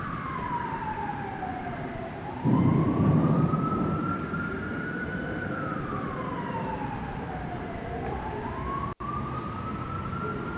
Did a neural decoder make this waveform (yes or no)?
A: yes